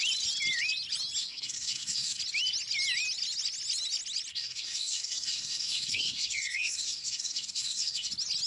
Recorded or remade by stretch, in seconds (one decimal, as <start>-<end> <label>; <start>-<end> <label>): 0.0-1.2 recorded; 1.2-2.2 remade; 2.2-4.3 recorded; 4.3-8.1 remade; 8.1-8.5 recorded